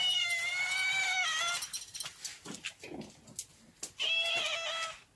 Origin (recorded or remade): recorded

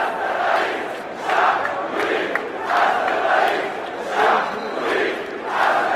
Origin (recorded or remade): recorded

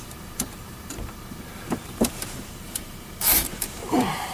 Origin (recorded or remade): remade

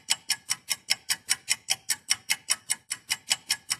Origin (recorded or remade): remade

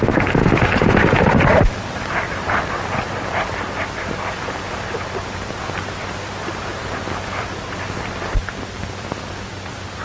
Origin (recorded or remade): remade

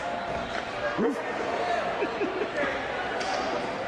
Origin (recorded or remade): recorded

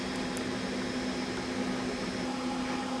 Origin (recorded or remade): recorded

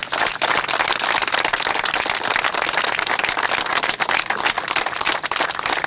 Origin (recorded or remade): recorded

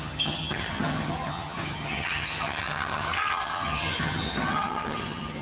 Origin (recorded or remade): remade